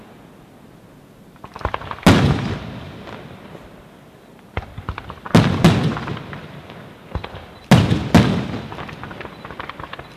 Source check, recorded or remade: recorded